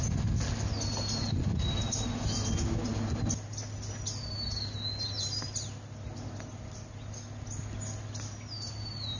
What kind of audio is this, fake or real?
real